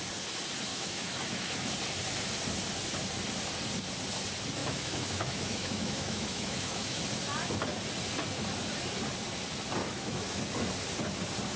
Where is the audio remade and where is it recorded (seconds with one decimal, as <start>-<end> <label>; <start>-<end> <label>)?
0.0-0.7 recorded; 0.7-1.7 remade; 1.7-4.6 recorded; 4.6-7.0 remade; 7.0-9.8 recorded; 9.8-10.4 remade; 10.4-11.6 recorded